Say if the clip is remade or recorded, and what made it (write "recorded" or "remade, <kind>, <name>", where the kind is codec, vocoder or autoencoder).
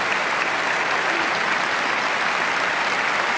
recorded